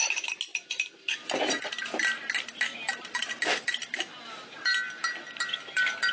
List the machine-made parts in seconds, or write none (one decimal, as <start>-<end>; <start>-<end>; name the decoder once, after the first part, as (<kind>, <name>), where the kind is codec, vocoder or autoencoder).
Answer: 0.5-1.6 (vocoder, BigVGAN v2)